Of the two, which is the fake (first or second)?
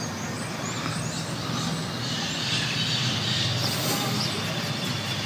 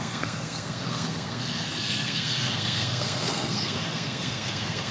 second